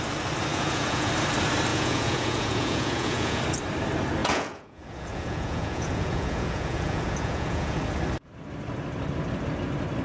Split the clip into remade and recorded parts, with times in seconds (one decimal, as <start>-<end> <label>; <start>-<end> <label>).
0.0-0.5 recorded; 0.5-1.1 remade; 1.1-1.7 recorded; 1.7-3.4 remade; 3.4-4.2 recorded; 4.2-7.8 remade; 7.8-10.0 recorded